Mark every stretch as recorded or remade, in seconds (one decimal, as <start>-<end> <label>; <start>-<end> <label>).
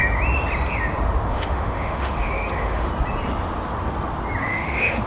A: 0.0-1.3 recorded; 1.3-2.9 remade; 2.9-4.4 recorded; 4.4-5.1 remade